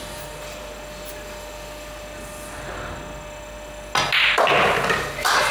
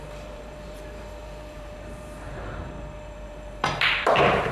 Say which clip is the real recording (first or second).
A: first